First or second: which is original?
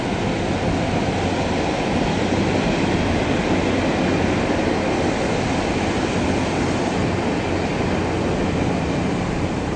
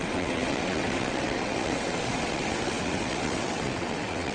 first